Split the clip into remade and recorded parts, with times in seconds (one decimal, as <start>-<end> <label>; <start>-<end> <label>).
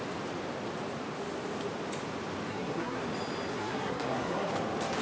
0.0-2.5 recorded; 2.5-3.0 remade; 3.0-3.5 recorded; 3.5-4.5 remade; 4.5-5.0 recorded